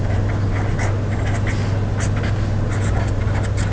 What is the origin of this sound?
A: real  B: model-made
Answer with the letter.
A